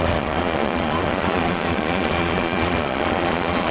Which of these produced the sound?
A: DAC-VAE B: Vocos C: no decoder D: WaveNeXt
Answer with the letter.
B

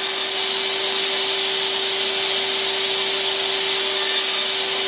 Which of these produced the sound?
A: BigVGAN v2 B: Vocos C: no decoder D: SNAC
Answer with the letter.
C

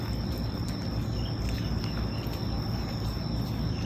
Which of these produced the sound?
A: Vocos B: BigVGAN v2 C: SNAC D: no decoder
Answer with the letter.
D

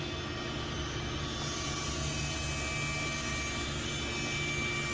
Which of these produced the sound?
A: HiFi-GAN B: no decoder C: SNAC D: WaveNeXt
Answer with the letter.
B